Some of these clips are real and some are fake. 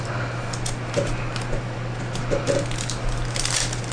real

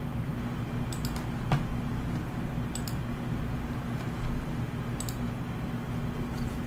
real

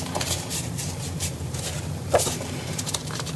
fake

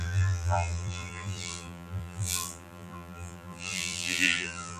fake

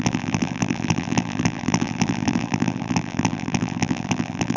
fake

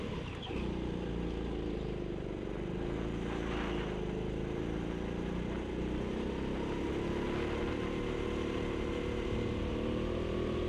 real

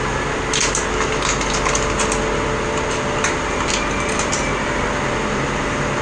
real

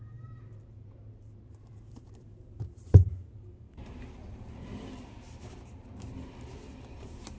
fake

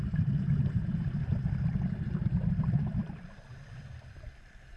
fake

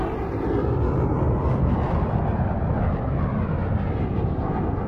real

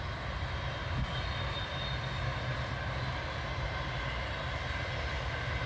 real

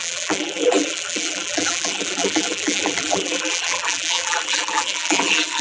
fake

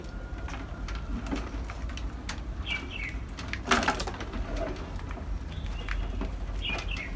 real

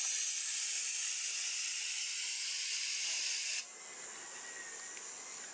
fake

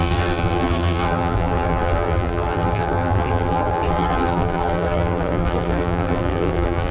fake